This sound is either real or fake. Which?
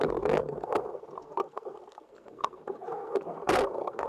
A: fake